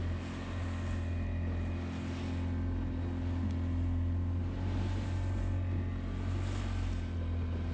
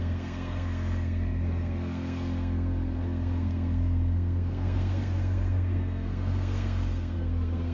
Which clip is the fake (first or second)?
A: second